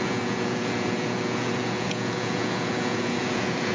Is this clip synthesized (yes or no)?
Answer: yes